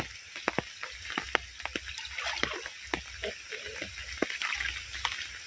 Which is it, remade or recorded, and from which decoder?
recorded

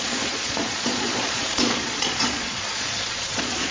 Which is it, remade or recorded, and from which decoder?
remade, vocoder, Vocos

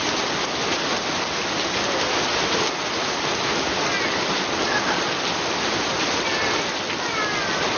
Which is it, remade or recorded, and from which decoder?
recorded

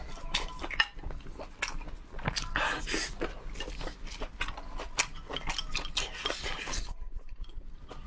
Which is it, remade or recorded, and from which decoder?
recorded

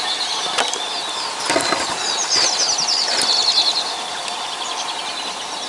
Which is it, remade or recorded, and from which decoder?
recorded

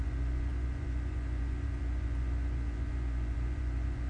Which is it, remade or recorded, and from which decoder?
remade, vocoder, Vocos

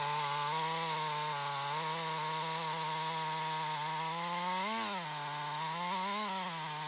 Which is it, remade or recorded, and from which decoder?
recorded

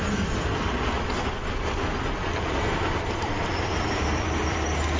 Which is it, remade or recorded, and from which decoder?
recorded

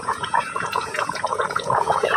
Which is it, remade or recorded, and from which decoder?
remade, vocoder, Vocos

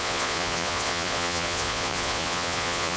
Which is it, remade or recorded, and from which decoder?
remade, vocoder, Vocos